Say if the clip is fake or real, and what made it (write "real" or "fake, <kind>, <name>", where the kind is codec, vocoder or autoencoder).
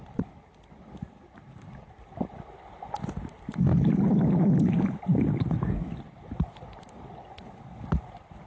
real